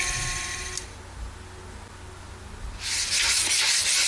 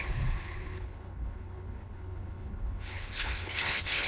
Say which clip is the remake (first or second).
second